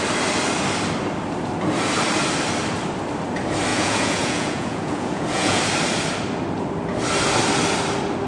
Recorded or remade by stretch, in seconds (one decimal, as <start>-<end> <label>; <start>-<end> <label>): 0.0-3.7 recorded; 3.7-5.6 remade; 5.6-8.3 recorded